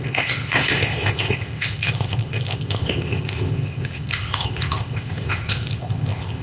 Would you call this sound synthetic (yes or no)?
yes